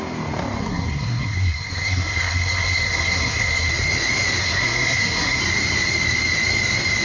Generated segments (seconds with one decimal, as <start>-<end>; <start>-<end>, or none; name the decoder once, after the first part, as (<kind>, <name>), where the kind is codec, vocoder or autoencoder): 0.6-3.7 (codec, SNAC); 4.4-5.4